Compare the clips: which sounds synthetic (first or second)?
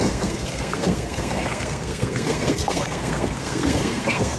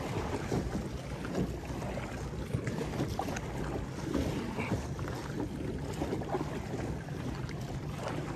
first